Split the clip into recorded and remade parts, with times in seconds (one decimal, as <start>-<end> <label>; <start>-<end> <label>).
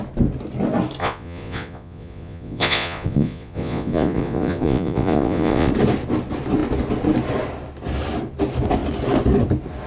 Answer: 0.0-1.0 recorded; 1.0-5.7 remade; 5.7-9.9 recorded